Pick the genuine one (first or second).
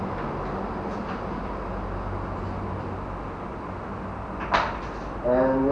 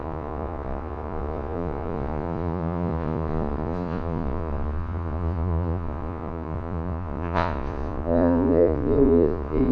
first